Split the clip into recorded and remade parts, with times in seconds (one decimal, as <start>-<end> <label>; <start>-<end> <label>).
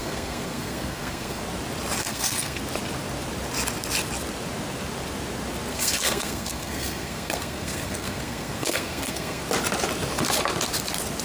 0.0-1.4 remade; 1.4-2.0 recorded; 2.0-2.6 remade; 2.6-5.7 recorded; 5.7-9.4 remade; 9.4-11.2 recorded